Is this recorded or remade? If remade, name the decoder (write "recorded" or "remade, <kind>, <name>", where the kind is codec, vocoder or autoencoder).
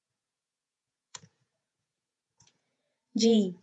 remade, vocoder, Vocos